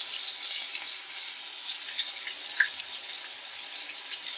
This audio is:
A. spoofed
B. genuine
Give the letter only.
B